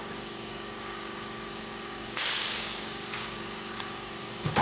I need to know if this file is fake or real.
fake